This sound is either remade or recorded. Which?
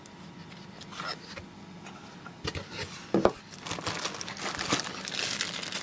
recorded